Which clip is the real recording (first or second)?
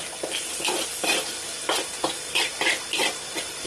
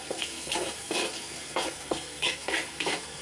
first